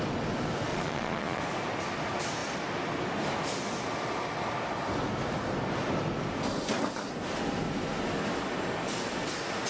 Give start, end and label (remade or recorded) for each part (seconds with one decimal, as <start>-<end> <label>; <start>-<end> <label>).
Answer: 0.0-0.7 recorded; 0.7-1.4 remade; 1.4-9.7 recorded